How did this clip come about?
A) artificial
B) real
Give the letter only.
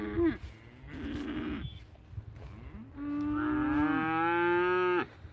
B